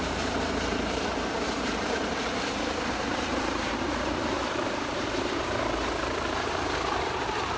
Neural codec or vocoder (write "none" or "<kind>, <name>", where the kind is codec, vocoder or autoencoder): vocoder, BigVGAN v2